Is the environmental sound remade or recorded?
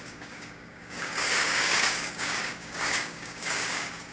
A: remade